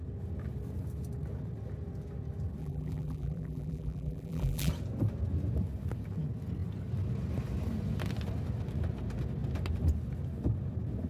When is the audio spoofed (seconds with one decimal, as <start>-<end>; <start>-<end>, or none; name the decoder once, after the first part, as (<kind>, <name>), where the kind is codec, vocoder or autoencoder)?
2.6-4.7 (vocoder, BigVGAN v2)